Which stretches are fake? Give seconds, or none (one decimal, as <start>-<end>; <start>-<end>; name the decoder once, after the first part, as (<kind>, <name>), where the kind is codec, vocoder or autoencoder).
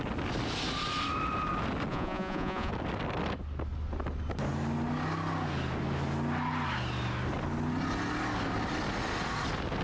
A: 1.9-2.7 (vocoder, Vocos)